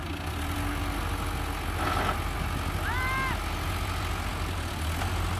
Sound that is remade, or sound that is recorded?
recorded